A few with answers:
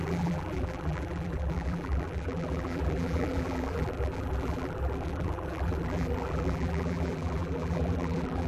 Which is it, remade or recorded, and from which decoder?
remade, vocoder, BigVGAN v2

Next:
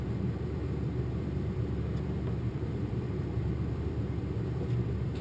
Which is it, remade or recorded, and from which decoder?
remade, vocoder, BigVGAN v2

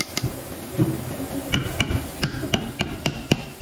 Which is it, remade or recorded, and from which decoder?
recorded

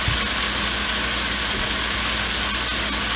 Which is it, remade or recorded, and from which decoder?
recorded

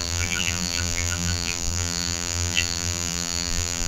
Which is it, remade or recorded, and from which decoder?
remade, vocoder, BigVGAN v2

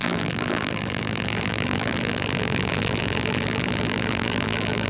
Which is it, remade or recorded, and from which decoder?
remade, vocoder, BigVGAN v2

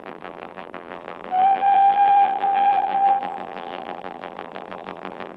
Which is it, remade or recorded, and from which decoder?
remade, vocoder, BigVGAN v2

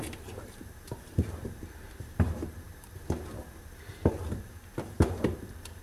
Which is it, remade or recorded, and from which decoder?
remade, vocoder, BigVGAN v2